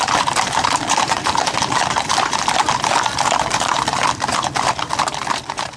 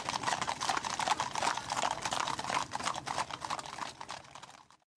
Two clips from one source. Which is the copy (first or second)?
first